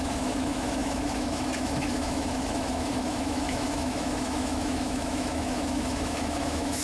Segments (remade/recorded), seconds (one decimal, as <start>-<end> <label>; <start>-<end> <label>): 0.0-6.8 remade